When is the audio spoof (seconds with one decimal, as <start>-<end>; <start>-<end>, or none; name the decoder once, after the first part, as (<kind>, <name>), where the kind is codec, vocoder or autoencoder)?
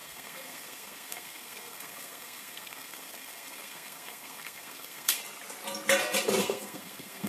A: 0.0-5.2 (codec, SNAC); 6.4-7.3